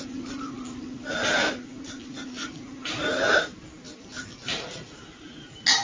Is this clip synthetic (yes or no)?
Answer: no